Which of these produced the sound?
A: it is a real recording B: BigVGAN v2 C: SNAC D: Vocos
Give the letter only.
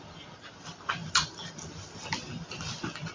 A